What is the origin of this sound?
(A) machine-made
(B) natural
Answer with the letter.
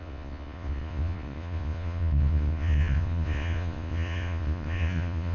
A